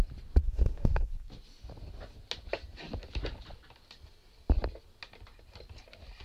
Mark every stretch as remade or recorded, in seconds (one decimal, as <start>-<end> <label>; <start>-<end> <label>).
0.0-0.4 recorded; 0.4-1.3 remade; 1.3-6.2 recorded